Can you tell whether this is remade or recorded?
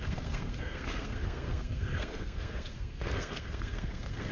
remade